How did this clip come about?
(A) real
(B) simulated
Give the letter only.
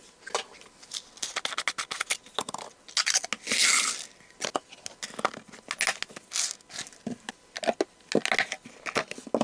A